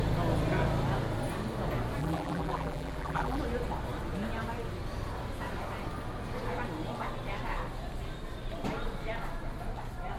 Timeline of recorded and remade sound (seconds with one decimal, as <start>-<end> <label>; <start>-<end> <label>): 0.0-2.0 recorded; 2.0-3.4 remade; 3.4-10.2 recorded